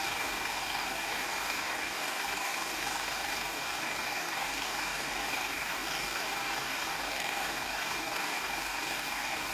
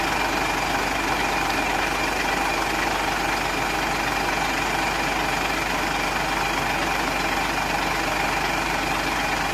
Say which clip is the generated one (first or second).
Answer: first